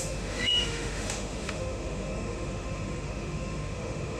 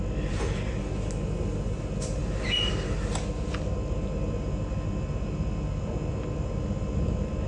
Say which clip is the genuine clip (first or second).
second